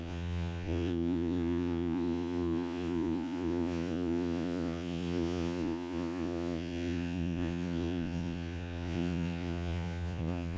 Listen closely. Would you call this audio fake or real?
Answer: fake